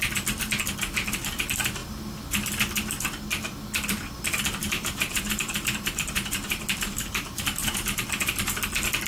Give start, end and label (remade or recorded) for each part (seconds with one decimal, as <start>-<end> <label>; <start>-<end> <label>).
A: 0.0-4.6 recorded; 4.6-8.6 remade; 8.6-9.1 recorded